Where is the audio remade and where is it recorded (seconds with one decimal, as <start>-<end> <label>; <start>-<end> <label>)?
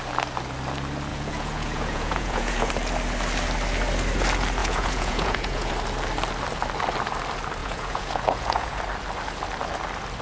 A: 0.0-1.1 recorded; 1.1-2.7 remade; 2.7-4.6 recorded; 4.6-5.7 remade; 5.7-7.6 recorded; 7.6-8.8 remade; 8.8-10.2 recorded